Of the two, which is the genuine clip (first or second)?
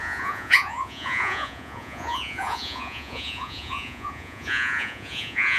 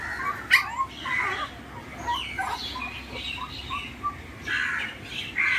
second